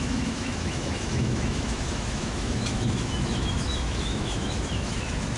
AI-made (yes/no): yes